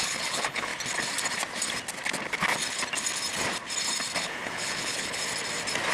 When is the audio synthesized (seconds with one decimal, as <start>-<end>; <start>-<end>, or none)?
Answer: 0.0-0.7; 4.2-5.2